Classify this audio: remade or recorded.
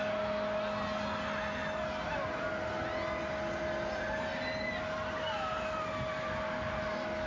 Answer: recorded